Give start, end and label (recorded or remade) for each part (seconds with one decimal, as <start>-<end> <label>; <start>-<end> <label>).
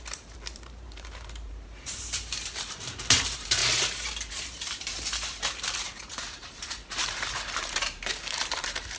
0.0-3.6 remade; 3.6-4.3 recorded; 4.3-9.0 remade